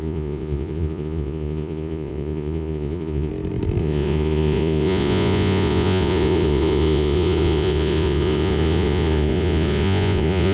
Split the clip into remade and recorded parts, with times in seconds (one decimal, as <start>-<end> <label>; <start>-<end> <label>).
0.0-3.3 remade; 3.3-3.8 recorded; 3.8-10.5 remade